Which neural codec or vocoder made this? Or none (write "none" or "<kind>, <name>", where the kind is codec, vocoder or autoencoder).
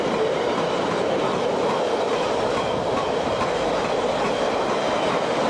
none